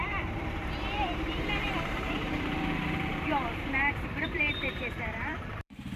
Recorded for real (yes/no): no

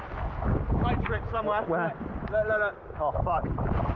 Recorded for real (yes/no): yes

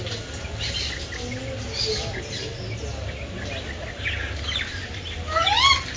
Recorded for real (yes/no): yes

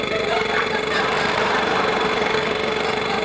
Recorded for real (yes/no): no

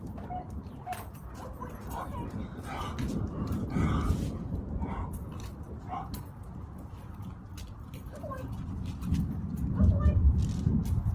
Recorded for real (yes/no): yes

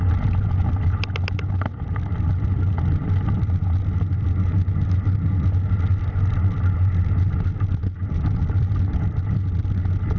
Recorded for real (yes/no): yes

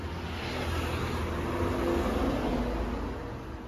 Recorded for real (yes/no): yes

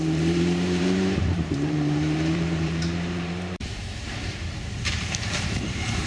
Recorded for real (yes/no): no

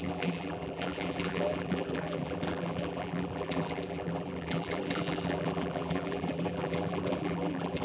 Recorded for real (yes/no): no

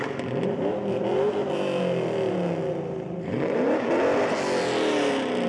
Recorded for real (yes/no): yes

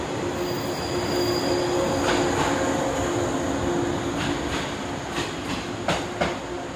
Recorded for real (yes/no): yes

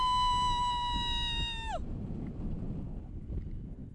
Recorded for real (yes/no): yes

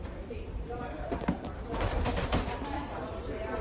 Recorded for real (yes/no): no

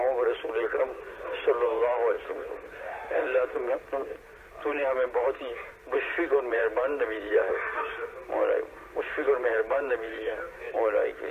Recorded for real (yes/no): no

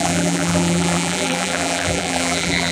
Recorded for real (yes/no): no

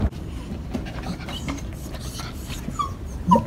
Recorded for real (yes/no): yes